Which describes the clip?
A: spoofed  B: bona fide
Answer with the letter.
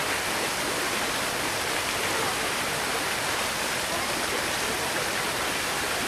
A